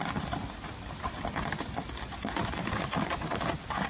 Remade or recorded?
recorded